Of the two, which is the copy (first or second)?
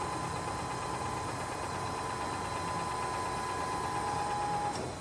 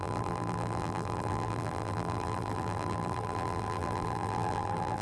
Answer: second